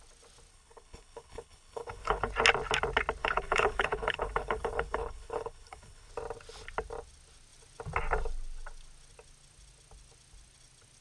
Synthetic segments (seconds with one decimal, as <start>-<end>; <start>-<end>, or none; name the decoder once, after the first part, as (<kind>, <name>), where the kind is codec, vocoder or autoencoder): 0.5-2.3 (codec, HILCodec); 3.2-6.1